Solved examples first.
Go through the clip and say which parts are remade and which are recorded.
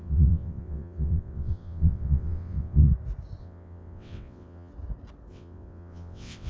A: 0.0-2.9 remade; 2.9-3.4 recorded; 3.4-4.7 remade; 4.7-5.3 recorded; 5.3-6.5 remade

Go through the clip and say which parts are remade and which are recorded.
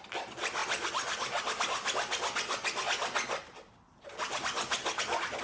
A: 0.0-5.4 recorded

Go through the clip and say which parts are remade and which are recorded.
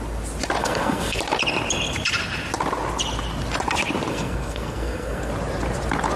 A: 0.0-0.6 recorded; 0.6-1.2 remade; 1.2-4.1 recorded; 4.1-5.3 remade; 5.3-6.2 recorded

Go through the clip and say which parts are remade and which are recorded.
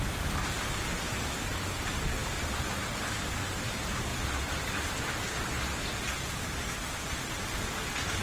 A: 0.0-8.2 recorded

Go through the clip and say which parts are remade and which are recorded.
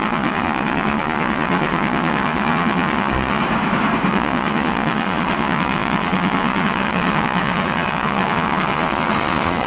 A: 0.0-3.4 remade; 3.4-4.1 recorded; 4.1-9.7 remade